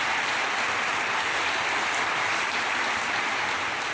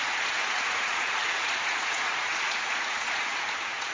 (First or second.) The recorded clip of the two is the first